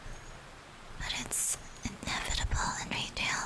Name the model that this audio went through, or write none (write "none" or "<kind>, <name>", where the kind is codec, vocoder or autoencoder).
vocoder, BigVGAN v2